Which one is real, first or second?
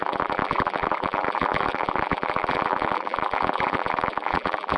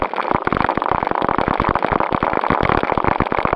second